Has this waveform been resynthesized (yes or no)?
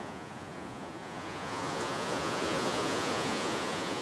yes